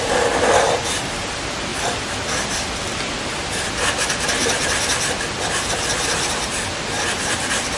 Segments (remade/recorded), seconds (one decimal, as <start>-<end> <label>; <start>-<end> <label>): 0.0-7.8 recorded